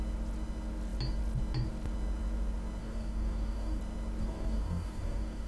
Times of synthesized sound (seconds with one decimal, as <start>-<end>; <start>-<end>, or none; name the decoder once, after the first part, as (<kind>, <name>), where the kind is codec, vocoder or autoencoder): 2.8-3.8 (codec, DAC); 4.2-5.5